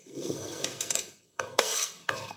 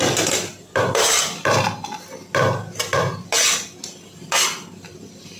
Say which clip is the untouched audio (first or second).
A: second